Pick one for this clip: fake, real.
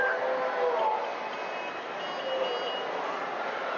real